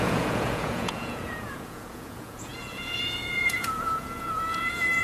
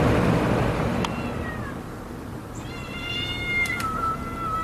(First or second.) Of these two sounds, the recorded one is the second